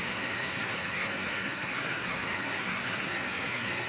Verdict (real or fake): fake